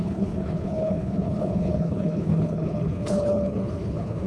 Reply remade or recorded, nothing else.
remade